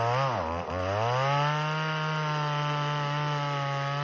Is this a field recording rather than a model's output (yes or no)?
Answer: yes